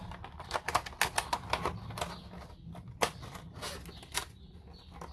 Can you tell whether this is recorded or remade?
recorded